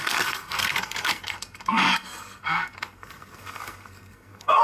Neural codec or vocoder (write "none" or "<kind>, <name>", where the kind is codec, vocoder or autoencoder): codec, SNAC